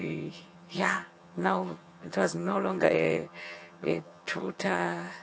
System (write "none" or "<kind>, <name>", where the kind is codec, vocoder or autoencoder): vocoder, HiFi-GAN